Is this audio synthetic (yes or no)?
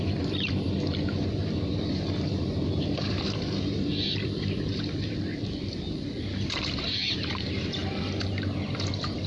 yes